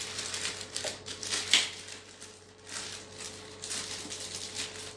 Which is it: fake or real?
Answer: real